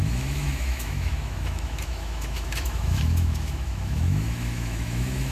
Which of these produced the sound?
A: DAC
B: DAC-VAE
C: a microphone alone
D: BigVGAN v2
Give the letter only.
B